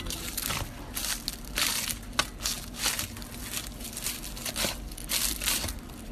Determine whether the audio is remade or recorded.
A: recorded